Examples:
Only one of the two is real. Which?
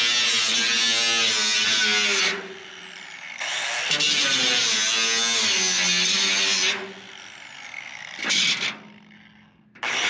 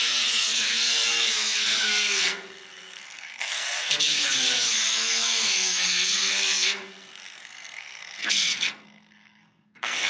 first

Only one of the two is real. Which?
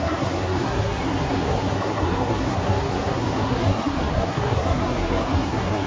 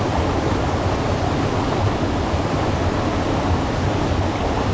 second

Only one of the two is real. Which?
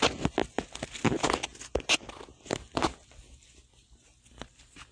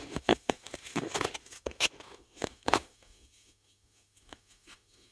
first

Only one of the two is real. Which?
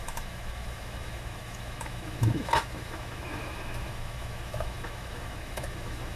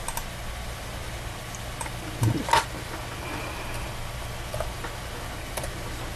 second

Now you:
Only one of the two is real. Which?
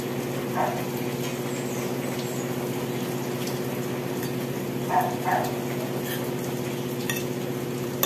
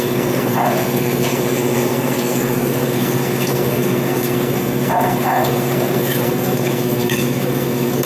first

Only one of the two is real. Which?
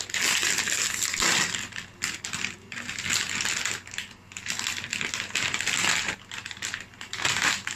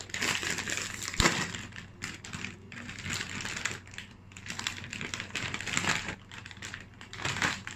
first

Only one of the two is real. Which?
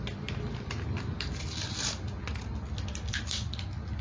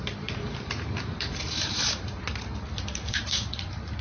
first